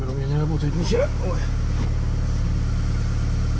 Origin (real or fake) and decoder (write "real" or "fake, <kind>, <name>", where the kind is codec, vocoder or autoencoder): real